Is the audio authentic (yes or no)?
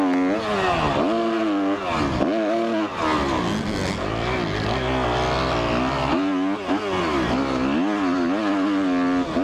yes